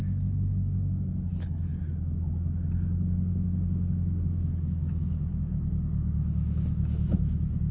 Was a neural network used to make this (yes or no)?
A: yes